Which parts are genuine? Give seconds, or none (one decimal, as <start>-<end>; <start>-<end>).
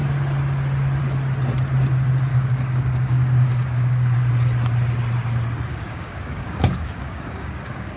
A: 0.0-2.3; 4.3-5.7